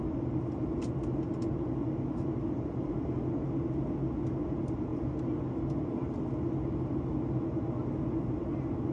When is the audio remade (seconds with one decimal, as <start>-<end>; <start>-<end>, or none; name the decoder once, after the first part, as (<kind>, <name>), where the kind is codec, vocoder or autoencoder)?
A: none